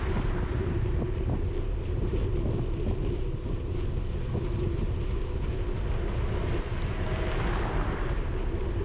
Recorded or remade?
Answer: recorded